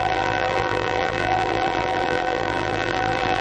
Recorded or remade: remade